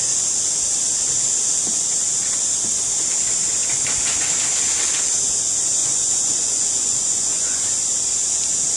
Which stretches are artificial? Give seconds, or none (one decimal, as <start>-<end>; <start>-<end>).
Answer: 5.8-7.6